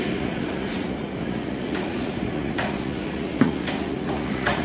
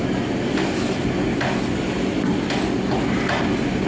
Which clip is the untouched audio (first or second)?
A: second